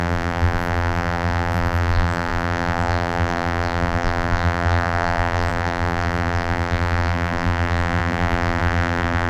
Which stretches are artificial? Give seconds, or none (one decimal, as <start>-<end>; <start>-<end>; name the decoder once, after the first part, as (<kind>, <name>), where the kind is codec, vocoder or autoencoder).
0.0-9.3 (vocoder, BigVGAN v2)